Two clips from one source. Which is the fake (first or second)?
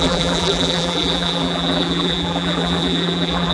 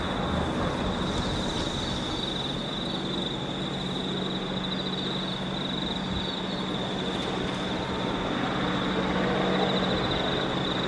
first